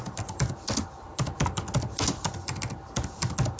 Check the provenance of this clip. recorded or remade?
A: recorded